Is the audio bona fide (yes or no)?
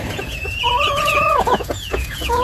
no